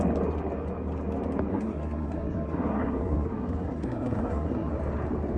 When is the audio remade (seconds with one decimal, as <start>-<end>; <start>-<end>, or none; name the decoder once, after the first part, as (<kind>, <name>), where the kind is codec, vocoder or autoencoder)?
1.5-4.7 (codec, SNAC)